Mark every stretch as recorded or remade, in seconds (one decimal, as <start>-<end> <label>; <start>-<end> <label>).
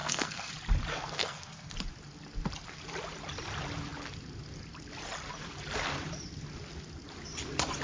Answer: 0.0-0.5 remade; 0.5-0.9 recorded; 0.9-1.7 remade; 1.7-7.8 recorded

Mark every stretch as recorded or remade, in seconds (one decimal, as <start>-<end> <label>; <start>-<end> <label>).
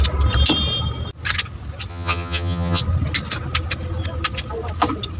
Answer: 0.0-1.9 recorded; 1.9-2.8 remade; 2.8-5.2 recorded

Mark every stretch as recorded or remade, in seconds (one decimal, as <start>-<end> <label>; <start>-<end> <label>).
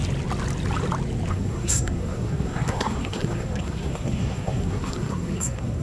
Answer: 0.0-1.3 recorded; 1.3-5.8 remade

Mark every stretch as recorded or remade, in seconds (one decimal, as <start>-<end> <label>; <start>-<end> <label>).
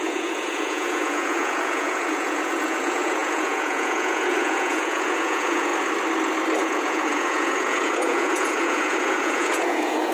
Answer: 0.0-5.7 remade; 5.7-6.6 recorded; 6.6-10.1 remade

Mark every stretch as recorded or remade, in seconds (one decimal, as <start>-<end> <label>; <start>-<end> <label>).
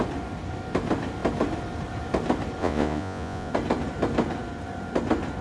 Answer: 0.0-2.6 recorded; 2.6-3.5 remade; 3.5-5.4 recorded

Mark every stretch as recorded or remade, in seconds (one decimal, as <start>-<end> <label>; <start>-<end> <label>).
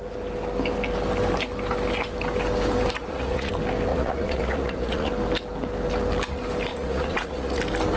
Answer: 0.0-3.0 recorded; 3.0-3.5 remade; 3.5-3.9 recorded; 3.9-5.1 remade; 5.1-6.7 recorded; 6.7-7.6 remade; 7.6-8.0 recorded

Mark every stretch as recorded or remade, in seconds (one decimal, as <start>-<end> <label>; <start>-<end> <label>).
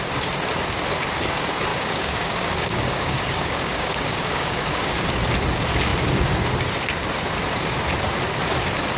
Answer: 0.0-1.7 recorded; 1.7-5.1 remade; 5.1-9.0 recorded